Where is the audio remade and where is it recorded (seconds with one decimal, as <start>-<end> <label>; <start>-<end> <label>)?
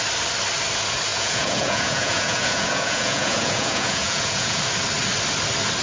0.0-1.1 recorded; 1.1-4.6 remade; 4.6-5.8 recorded